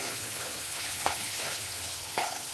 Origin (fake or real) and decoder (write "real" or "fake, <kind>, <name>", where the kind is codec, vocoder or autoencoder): fake, codec, HILCodec